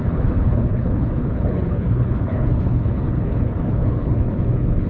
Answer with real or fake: fake